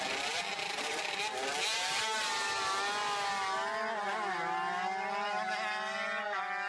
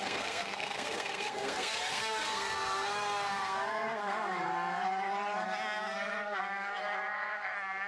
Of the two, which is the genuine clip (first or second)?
first